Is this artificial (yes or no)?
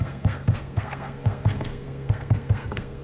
yes